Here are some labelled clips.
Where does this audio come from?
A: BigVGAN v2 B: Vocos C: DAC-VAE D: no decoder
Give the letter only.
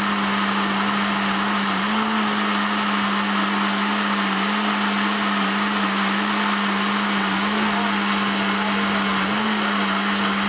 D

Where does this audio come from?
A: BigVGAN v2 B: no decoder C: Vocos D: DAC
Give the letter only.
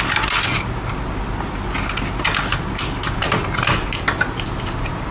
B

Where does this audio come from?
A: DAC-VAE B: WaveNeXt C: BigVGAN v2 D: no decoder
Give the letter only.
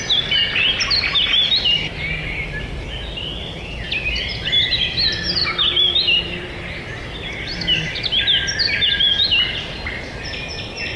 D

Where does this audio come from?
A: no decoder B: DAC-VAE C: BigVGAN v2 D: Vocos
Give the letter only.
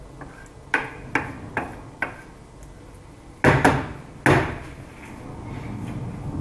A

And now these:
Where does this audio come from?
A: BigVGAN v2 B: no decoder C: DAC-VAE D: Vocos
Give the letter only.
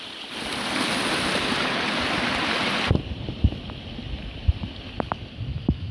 B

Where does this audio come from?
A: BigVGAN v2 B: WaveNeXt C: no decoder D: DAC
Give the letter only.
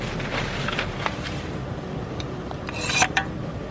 A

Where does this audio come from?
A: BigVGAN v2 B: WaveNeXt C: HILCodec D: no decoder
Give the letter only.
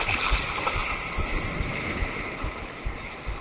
D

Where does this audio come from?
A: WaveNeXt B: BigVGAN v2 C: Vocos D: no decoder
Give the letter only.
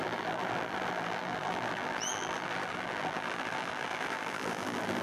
B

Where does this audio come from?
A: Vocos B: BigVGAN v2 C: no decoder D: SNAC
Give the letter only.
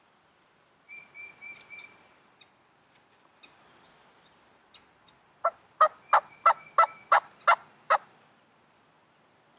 C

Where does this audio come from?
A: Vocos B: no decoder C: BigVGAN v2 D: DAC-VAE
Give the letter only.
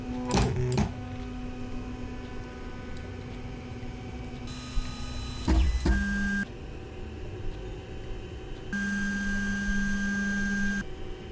B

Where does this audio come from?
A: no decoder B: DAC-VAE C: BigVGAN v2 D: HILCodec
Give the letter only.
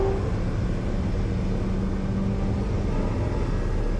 A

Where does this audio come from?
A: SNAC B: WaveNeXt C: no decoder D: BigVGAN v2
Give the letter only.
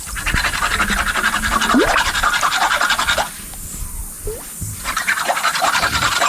C